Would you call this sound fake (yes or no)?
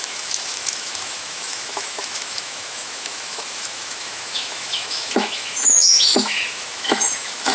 yes